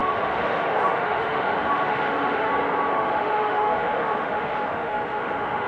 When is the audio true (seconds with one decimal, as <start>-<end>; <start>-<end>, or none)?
2.5-2.9